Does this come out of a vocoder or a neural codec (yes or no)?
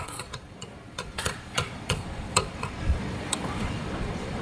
yes